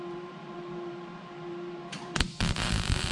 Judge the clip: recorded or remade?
remade